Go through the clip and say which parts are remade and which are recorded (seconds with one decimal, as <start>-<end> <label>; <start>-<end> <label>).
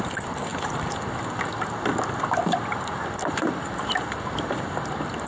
0.0-5.3 recorded